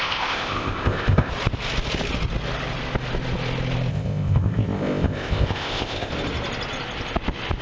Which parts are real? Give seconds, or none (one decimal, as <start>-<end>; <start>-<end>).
1.3-3.9; 6.1-7.6